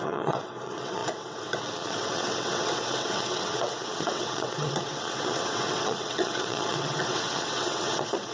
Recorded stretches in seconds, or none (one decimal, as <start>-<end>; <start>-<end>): none